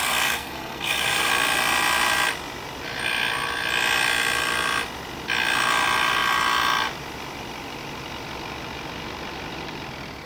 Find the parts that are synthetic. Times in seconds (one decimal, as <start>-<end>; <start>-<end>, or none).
0.0-1.3